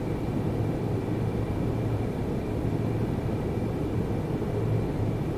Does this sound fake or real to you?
real